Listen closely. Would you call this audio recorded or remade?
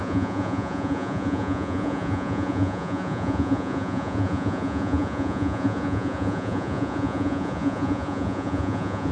remade